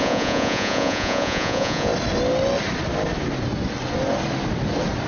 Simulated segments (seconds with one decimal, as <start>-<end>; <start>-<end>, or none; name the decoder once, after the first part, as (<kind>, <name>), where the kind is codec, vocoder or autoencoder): 0.0-1.9 (vocoder, Vocos)